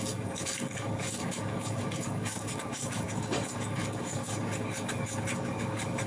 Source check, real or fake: fake